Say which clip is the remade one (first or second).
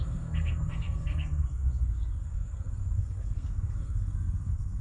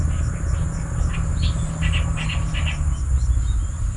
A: first